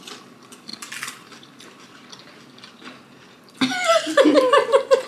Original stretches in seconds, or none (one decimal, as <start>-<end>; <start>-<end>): 0.0-0.7; 2.4-5.1